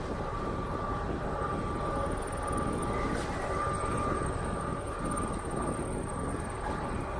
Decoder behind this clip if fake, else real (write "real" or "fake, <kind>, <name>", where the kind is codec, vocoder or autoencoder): real